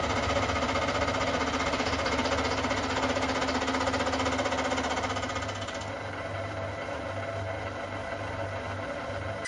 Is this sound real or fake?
real